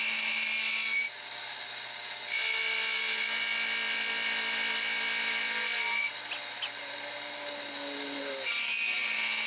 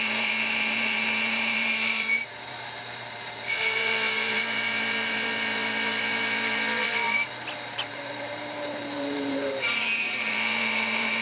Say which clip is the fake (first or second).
second